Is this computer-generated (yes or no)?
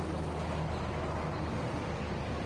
no